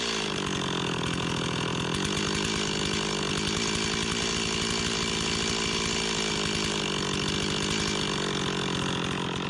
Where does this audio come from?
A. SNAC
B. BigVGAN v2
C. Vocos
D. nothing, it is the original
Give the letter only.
D